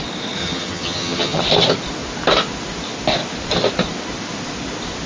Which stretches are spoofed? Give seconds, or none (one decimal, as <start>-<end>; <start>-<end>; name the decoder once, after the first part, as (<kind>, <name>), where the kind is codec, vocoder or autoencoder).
0.4-1.4 (vocoder, HiFi-GAN)

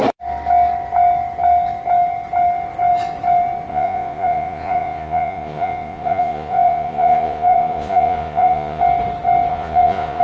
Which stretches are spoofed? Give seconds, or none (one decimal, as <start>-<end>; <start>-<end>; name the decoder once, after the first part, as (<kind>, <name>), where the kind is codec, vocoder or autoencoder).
3.7-8.8 (vocoder, Vocos); 9.5-10.2

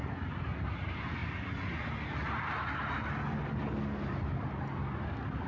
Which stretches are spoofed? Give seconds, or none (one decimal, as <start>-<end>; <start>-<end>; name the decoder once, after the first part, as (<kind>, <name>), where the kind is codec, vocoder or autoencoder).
none

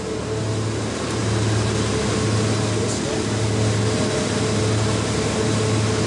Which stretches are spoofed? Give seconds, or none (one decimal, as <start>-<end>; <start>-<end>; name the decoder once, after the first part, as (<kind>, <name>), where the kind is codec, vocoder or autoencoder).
none

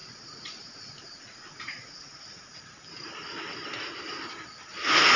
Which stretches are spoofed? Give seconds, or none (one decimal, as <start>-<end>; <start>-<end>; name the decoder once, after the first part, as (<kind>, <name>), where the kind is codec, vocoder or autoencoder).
0.0-2.6 (vocoder, Vocos)

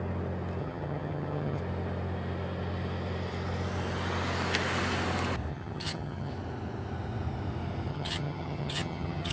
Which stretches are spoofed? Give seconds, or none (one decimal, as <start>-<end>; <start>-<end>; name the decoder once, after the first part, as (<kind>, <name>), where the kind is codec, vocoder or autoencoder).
0.6-1.6 (vocoder, HiFi-GAN); 5.5-6.3; 7.9-9.3

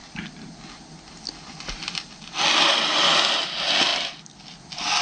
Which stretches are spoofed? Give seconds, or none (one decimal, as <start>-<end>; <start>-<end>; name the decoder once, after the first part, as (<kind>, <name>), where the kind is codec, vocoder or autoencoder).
none